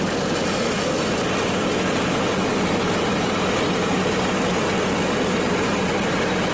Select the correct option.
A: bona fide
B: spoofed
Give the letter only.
A